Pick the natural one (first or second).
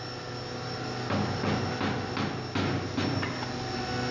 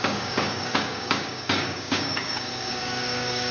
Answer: first